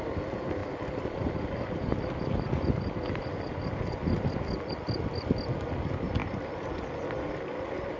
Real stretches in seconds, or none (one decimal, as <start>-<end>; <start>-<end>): 0.0-8.0

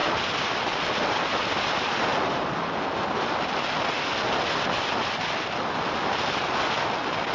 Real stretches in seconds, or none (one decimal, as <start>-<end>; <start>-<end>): 1.7-7.3

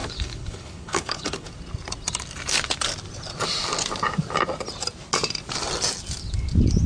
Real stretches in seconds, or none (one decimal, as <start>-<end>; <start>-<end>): 1.5-6.9

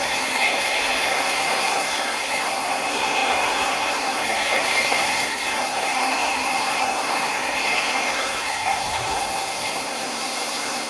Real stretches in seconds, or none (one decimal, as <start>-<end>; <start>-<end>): none